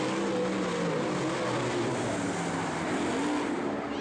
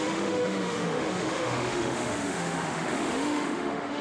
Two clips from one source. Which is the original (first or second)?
first